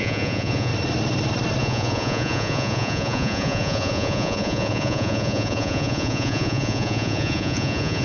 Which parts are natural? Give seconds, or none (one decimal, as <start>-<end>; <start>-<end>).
0.7-1.6